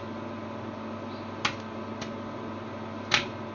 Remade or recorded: recorded